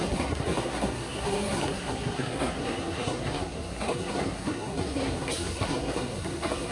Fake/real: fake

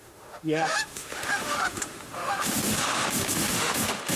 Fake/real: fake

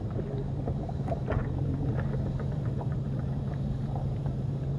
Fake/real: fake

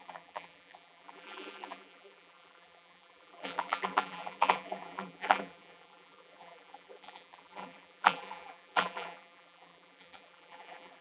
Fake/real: fake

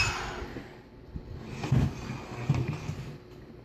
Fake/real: real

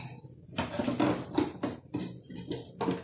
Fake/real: real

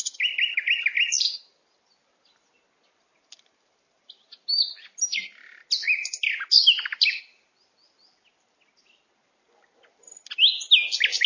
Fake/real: real